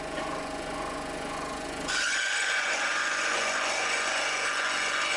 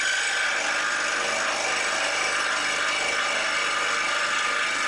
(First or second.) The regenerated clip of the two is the first